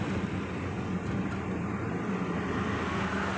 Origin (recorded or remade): recorded